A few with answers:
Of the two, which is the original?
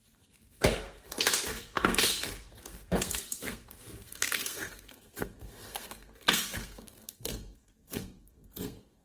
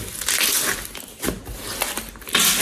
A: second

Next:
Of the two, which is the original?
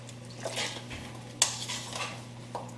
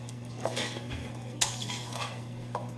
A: first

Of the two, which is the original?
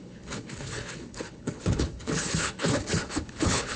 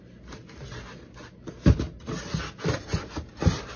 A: second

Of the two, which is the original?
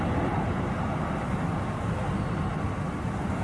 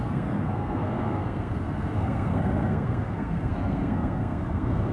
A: first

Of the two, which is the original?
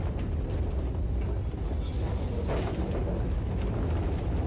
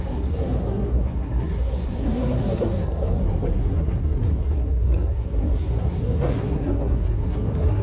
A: first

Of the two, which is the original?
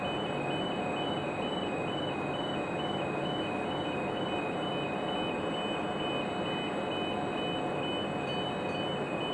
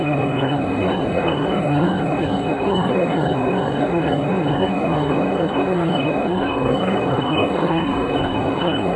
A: first